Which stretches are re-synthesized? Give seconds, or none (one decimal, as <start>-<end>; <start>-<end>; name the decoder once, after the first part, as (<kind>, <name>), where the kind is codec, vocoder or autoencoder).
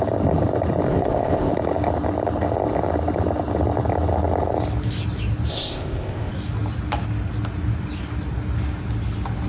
0.9-1.5 (codec, ZipCodec); 5.5-6.3